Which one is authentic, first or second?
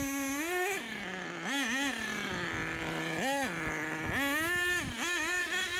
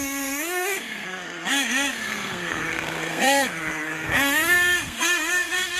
first